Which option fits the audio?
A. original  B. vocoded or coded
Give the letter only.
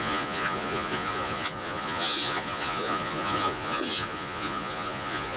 B